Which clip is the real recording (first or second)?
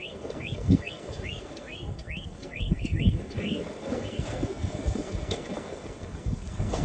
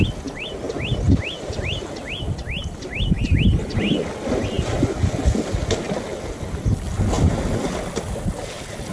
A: second